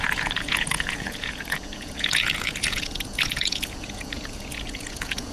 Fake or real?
fake